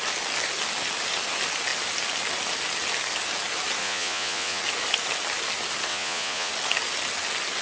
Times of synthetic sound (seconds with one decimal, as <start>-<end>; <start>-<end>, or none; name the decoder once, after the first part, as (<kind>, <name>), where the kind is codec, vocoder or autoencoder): 3.8-4.6 (vocoder, Vocos); 5.9-6.5